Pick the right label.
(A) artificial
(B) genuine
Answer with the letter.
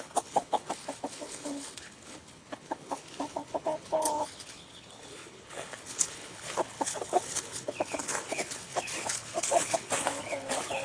A